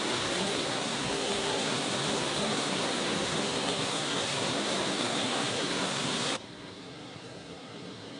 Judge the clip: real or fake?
fake